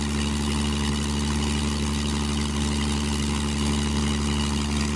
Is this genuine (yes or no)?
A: yes